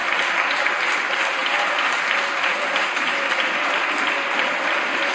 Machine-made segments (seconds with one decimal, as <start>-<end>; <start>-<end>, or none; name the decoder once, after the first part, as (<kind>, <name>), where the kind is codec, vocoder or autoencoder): none